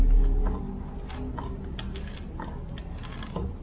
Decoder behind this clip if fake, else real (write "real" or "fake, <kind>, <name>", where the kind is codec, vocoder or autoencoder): real